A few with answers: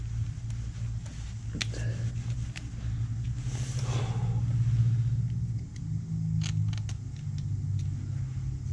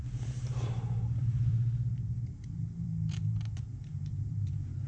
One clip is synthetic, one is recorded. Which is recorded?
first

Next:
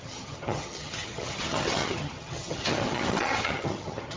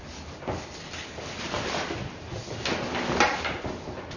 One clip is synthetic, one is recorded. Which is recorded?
second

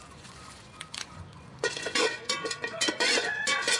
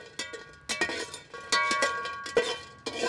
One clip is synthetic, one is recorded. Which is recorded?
second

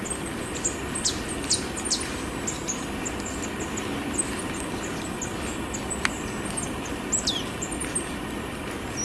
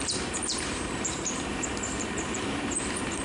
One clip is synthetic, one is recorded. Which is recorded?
first